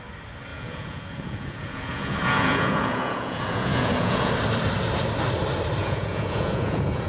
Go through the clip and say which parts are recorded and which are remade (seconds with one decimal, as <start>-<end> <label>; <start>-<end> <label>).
0.0-0.5 recorded; 0.5-4.3 remade; 4.3-5.8 recorded; 5.8-7.1 remade